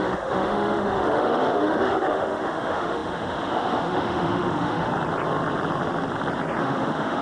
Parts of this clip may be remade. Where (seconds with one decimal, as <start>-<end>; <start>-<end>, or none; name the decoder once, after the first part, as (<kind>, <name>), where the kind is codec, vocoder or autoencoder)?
0.0-4.9 (autoencoder, DAC-VAE); 6.6-7.2